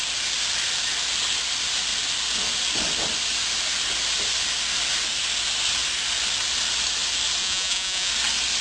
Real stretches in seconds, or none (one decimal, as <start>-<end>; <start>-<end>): 0.0-7.4; 8.1-8.6